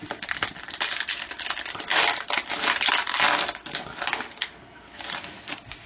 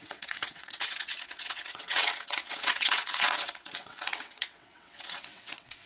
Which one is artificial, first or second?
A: second